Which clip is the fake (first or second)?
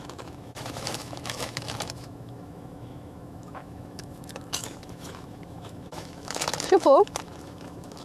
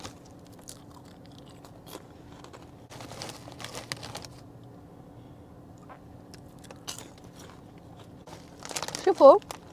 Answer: first